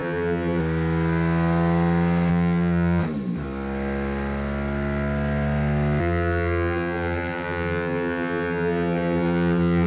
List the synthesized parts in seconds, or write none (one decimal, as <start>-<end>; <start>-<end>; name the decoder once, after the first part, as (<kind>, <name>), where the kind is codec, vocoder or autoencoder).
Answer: 0.0-0.6 (vocoder, BigVGAN v2); 2.3-3.0; 6.0-9.9